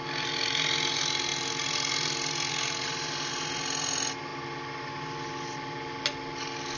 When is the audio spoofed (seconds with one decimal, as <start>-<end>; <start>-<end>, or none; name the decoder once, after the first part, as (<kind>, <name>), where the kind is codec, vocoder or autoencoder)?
none